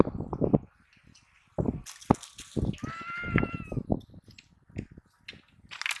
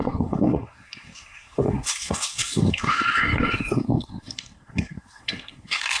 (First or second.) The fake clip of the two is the second